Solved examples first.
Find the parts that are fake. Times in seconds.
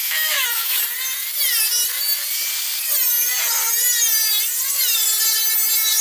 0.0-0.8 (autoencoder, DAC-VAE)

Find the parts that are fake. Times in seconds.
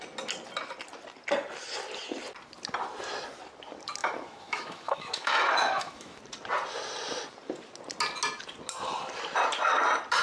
4.0-6.2 (autoencoder, DAC-VAE)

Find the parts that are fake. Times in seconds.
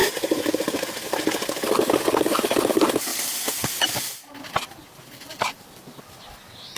none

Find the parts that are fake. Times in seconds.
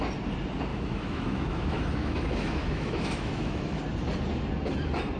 0.7-3.8 (autoencoder, DAC-VAE)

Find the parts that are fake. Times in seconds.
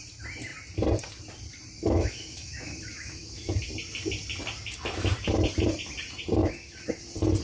1.8-3.6 (autoencoder, DAC-VAE); 6.4-7.0